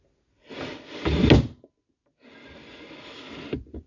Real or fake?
real